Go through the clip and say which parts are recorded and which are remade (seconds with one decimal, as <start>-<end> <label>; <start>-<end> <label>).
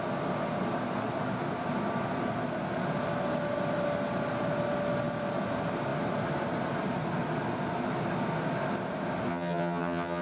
0.0-9.3 recorded; 9.3-10.2 remade